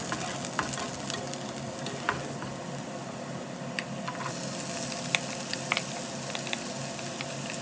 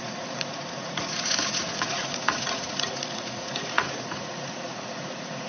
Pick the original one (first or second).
first